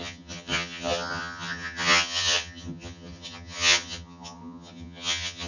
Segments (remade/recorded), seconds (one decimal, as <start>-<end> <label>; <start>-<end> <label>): 0.0-5.5 remade